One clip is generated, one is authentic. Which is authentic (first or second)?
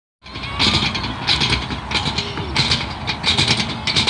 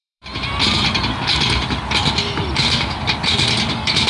first